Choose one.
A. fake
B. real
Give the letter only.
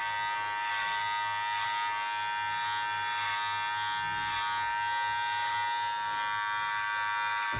B